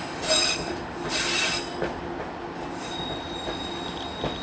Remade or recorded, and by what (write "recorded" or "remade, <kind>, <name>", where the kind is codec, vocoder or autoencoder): recorded